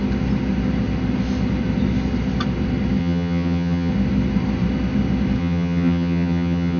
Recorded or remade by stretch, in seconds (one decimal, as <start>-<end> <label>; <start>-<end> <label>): 0.0-3.0 recorded; 3.0-3.9 remade; 3.9-5.4 recorded; 5.4-6.8 remade